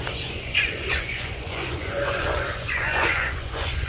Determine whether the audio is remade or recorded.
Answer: remade